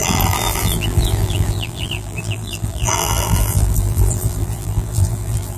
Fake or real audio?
fake